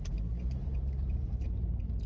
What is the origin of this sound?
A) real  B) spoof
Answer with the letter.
A